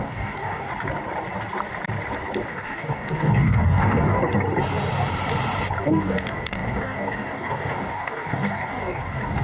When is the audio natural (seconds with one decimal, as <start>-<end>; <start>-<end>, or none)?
0.7-2.5; 4.2-5.8